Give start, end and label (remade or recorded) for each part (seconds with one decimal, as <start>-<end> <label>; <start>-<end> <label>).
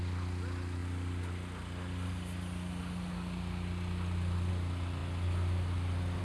0.0-6.2 recorded